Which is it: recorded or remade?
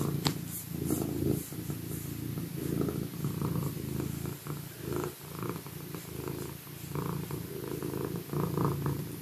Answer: recorded